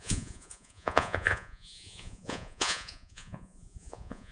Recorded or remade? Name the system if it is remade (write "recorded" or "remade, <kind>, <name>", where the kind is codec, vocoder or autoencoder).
remade, vocoder, Vocos